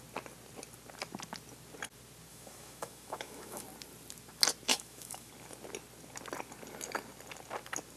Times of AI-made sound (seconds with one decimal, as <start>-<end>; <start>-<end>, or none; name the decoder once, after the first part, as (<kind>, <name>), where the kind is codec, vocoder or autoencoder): 2.3-3.6 (autoencoder, DAC-VAE); 4.7-5.3